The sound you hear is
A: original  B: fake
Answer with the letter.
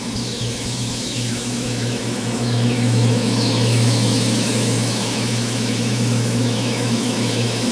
B